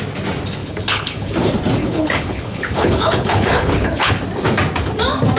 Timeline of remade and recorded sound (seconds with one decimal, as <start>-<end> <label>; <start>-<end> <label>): 0.0-0.6 recorded; 0.6-1.3 remade; 1.3-1.8 recorded; 1.8-4.1 remade; 4.1-5.4 recorded